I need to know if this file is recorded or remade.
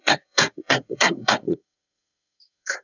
remade